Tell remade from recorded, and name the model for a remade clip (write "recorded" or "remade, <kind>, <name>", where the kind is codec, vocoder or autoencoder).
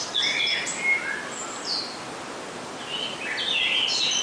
recorded